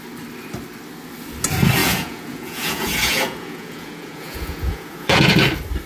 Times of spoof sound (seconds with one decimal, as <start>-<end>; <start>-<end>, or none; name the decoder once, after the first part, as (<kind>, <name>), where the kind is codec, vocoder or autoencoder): 1.8-5.3 (vocoder, Vocos)